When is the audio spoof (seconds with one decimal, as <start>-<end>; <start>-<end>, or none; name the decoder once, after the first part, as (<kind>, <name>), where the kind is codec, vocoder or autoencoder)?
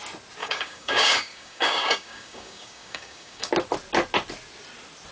0.4-3.5 (codec, DAC)